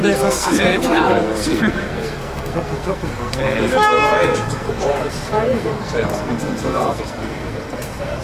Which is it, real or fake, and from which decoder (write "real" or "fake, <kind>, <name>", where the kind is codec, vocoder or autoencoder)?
fake, codec, SNAC